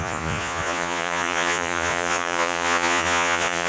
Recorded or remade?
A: remade